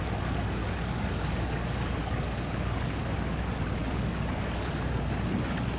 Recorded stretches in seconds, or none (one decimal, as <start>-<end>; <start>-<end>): 0.0-0.6; 3.4-3.8; 4.7-5.8